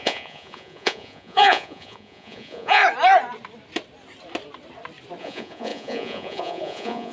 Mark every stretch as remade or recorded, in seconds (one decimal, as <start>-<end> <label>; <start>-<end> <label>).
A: 0.0-2.8 remade; 2.8-5.2 recorded; 5.2-7.1 remade